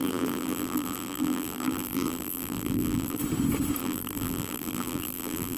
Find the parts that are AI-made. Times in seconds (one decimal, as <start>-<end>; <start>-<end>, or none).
0.0-3.2; 3.8-5.6